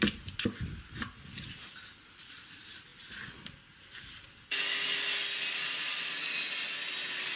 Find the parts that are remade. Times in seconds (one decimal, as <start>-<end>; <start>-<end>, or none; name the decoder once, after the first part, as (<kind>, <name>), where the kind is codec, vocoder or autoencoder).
none